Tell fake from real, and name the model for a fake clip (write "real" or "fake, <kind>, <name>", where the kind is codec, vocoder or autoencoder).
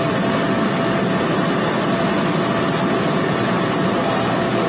real